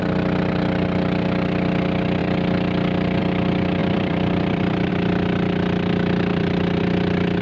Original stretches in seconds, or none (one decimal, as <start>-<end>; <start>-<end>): 0.0-3.8; 4.9-6.3; 6.8-7.4

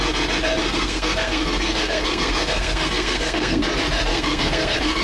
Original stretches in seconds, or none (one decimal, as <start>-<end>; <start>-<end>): 0.0-0.6; 3.6-4.1